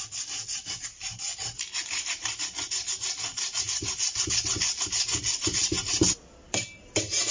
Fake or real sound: real